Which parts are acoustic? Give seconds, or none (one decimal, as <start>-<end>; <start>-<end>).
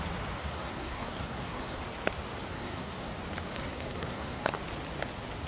0.0-0.4; 1.8-2.5; 3.1-3.5; 4.5-5.5